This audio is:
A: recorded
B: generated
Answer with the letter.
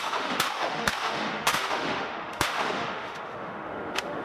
B